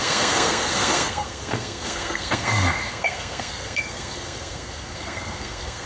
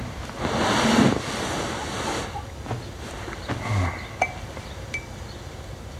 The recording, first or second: second